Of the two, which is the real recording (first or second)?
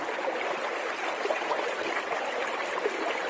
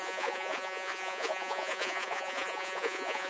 first